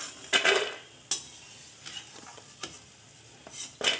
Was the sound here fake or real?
real